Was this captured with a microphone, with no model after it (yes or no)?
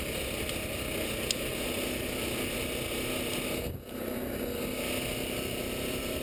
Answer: yes